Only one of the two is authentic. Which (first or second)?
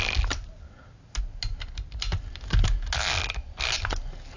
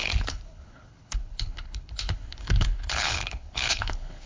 first